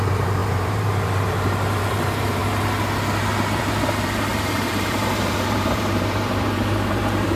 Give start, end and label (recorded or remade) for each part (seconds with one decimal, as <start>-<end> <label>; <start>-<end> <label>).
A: 0.0-2.4 remade; 2.4-3.6 recorded; 3.6-7.4 remade